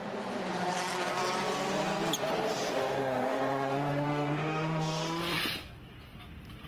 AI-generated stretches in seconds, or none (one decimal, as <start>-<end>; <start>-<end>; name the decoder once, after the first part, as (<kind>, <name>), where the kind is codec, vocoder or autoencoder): 2.7-5.2 (autoencoder, DAC-VAE)